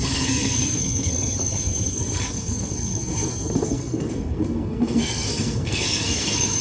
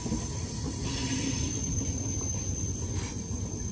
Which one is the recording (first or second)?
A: second